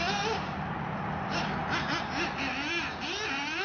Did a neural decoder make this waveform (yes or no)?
no